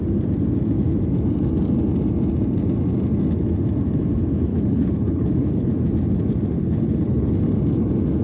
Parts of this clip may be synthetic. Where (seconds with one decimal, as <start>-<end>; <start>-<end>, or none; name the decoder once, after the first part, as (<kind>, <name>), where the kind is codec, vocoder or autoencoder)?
4.5-5.7 (codec, HILCodec); 6.6-7.3